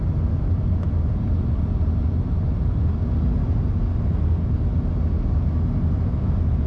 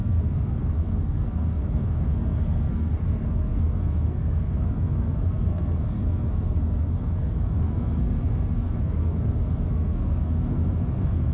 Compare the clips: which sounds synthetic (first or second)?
second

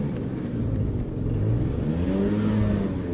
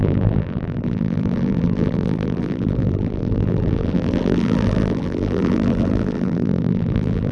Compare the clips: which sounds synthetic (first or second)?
second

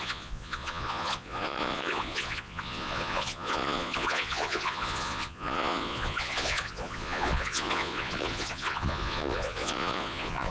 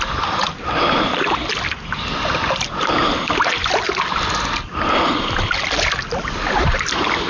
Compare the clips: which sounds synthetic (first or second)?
first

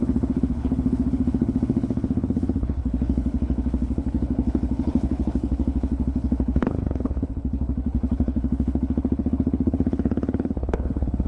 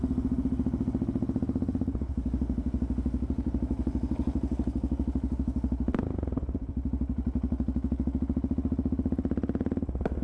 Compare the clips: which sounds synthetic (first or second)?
first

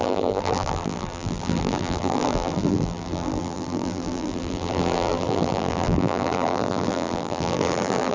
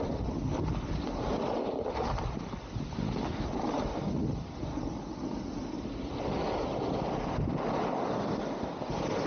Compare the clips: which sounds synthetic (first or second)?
first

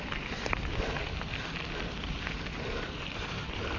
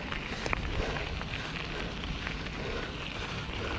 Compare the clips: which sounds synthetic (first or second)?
first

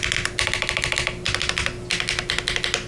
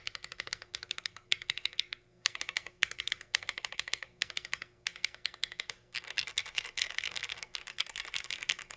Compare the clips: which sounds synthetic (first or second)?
second